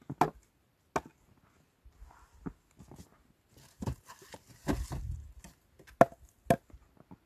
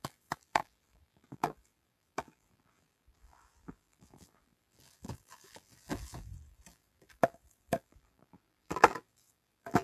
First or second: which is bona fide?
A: first